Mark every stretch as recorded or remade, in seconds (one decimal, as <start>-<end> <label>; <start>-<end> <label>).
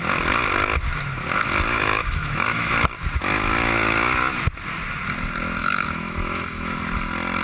0.0-1.7 recorded; 1.7-2.7 remade; 2.7-5.6 recorded; 5.6-6.8 remade; 6.8-7.4 recorded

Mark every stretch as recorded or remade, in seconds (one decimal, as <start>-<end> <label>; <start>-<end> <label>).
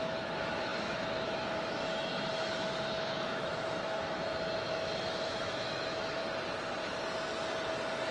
0.0-6.2 remade; 6.2-8.1 recorded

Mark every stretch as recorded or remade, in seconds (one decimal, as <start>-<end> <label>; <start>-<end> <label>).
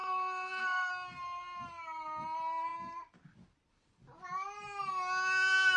0.0-0.9 remade; 0.9-5.8 recorded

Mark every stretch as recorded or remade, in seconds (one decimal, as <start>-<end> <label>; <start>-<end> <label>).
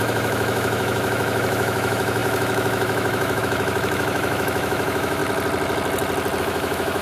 0.0-5.2 remade; 5.2-6.4 recorded; 6.4-7.0 remade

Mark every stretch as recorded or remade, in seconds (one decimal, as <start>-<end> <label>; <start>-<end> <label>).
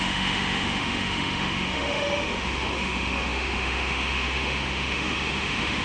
0.0-5.8 remade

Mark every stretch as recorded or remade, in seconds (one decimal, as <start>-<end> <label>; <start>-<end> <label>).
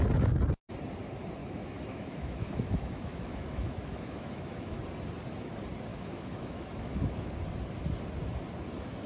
0.0-1.4 recorded; 1.4-4.8 remade; 4.8-5.9 recorded; 5.9-7.3 remade; 7.3-9.1 recorded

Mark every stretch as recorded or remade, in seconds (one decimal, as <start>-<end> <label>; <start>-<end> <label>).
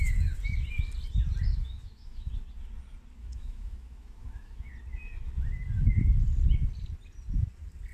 0.0-1.5 recorded; 1.5-2.3 remade; 2.3-3.2 recorded; 3.2-4.7 remade; 4.7-7.9 recorded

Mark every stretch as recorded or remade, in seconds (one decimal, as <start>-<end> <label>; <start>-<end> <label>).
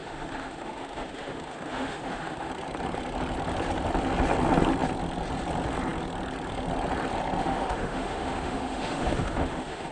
0.0-2.5 remade; 2.5-7.4 recorded; 7.4-9.9 remade